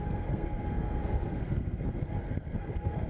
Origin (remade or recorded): remade